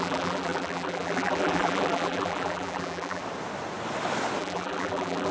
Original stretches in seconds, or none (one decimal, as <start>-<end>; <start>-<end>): 3.2-4.4